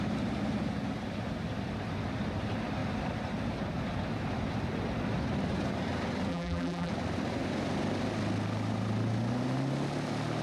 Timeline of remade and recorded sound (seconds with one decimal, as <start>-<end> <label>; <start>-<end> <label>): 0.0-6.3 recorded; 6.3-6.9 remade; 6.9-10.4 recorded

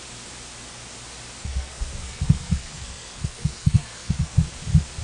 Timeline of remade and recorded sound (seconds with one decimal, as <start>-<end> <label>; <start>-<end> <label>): 0.0-1.4 recorded; 1.4-4.4 remade; 4.4-5.0 recorded

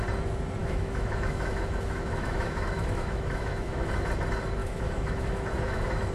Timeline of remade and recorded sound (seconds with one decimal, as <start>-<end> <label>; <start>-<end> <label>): 0.0-0.6 recorded; 0.6-4.1 remade; 4.1-4.6 recorded; 4.6-6.1 remade

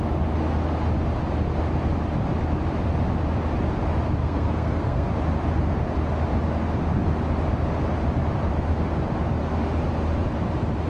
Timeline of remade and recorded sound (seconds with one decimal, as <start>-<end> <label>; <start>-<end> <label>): 0.0-4.2 recorded; 4.2-5.1 remade; 5.1-10.9 recorded